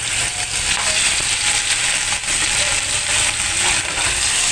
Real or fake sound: real